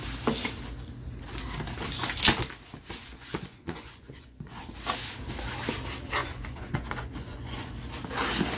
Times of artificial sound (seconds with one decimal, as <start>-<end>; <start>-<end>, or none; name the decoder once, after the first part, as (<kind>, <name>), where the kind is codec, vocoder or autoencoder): 3.0-4.6 (vocoder, Vocos); 6.2-7.7